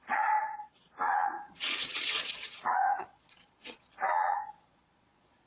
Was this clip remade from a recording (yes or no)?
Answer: yes